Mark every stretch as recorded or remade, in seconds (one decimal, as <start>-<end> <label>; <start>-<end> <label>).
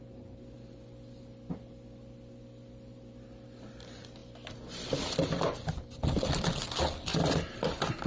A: 0.0-8.1 recorded